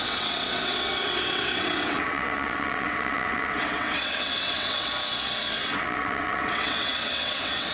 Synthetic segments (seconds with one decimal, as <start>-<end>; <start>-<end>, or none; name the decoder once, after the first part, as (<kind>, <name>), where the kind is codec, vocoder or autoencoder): 0.0-4.9 (vocoder, WaveNeXt); 5.5-7.7